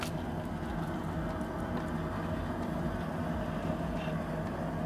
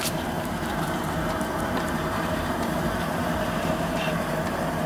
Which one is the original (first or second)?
first